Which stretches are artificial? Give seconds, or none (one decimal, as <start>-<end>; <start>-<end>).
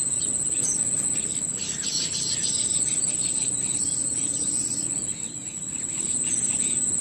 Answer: none